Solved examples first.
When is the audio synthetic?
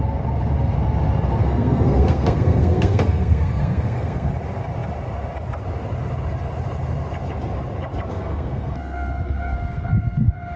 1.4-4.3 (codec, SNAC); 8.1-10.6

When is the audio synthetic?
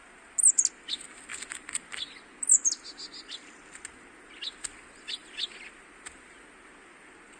none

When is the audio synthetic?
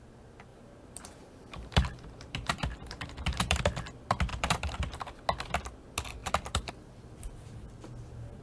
0.5-3.6 (vocoder, BigVGAN v2); 4.3-5.2; 6.2-6.7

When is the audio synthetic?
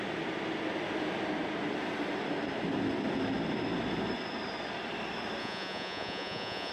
5.4-6.7 (vocoder, Vocos)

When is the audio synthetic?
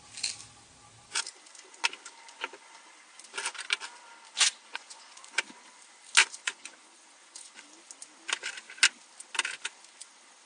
4.7-5.3 (vocoder, Vocos); 6.2-7.6